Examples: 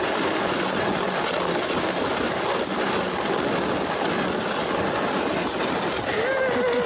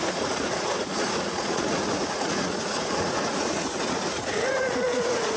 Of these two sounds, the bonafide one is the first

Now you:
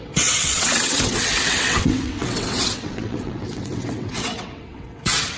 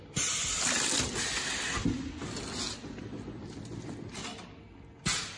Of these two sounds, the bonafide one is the second